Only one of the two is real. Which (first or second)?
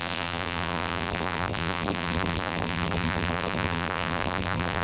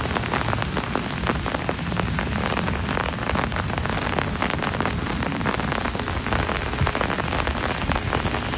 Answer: second